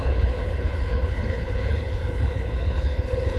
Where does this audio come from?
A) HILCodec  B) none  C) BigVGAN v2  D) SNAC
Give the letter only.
A